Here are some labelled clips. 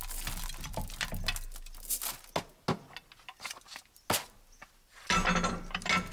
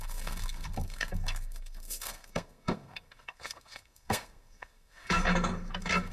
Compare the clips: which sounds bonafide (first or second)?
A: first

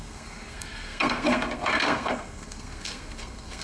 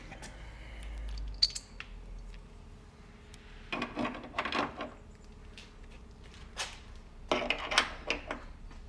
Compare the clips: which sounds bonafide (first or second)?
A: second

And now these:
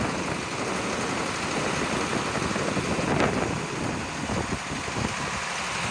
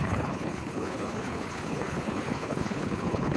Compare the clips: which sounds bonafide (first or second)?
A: first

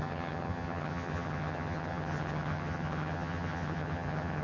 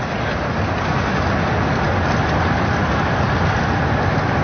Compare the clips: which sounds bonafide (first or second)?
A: second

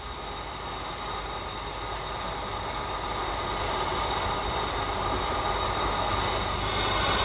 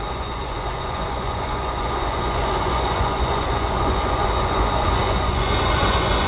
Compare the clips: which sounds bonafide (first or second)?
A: first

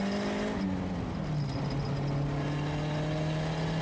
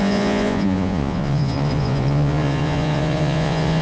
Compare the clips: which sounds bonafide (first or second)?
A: first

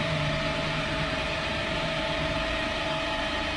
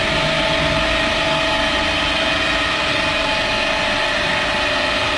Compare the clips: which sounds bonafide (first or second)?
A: second